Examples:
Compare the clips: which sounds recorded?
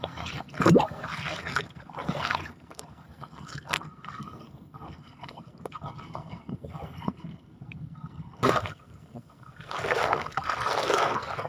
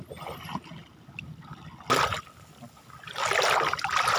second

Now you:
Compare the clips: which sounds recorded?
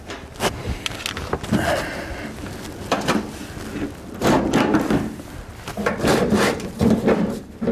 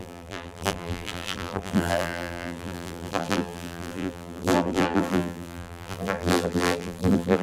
first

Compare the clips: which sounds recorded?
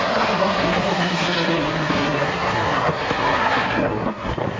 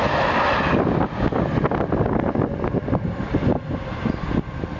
second